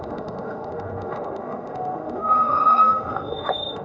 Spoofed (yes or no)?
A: yes